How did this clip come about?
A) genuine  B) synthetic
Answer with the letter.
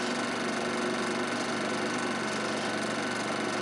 A